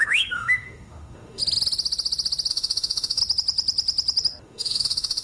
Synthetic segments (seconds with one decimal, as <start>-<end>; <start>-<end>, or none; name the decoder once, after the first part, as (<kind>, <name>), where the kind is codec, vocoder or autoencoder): 0.0-1.4 (autoencoder, DAC-VAE); 2.5-3.2; 4.4-5.2